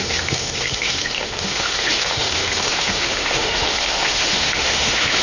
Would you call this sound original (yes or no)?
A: no